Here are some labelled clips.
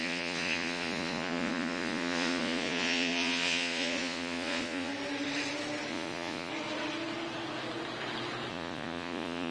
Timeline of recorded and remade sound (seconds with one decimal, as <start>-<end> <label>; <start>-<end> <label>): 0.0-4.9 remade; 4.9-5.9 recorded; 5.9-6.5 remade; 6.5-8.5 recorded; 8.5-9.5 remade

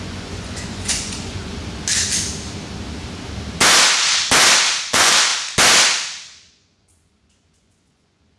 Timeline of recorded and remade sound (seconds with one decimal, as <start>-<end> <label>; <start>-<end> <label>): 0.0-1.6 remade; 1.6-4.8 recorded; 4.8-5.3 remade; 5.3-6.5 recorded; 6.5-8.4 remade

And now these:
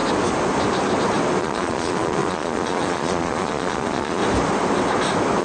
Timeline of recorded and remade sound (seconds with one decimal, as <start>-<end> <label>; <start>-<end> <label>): 0.0-1.4 recorded; 1.4-4.2 remade; 4.2-5.4 recorded

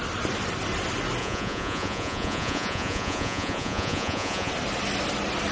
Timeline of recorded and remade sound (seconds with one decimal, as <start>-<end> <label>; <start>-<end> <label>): 0.0-1.2 recorded; 1.2-4.5 remade; 4.5-5.5 recorded

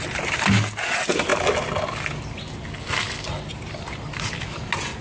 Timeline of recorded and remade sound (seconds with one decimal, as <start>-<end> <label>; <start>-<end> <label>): 0.0-5.0 recorded

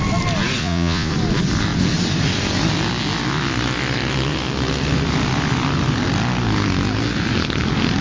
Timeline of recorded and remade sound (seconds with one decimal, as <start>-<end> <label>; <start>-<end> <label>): 0.0-0.6 recorded; 0.6-1.1 remade; 1.1-8.0 recorded

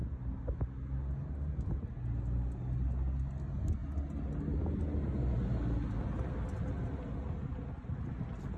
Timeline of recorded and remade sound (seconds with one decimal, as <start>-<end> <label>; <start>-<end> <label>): 0.0-8.6 recorded

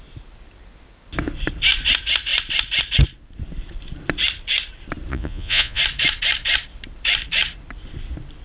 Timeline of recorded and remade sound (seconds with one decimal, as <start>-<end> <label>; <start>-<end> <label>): 0.0-5.1 recorded; 5.1-5.8 remade; 5.8-8.4 recorded